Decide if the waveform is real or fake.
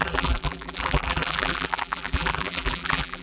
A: fake